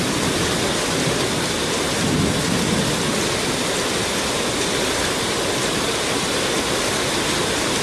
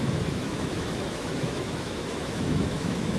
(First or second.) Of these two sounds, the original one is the first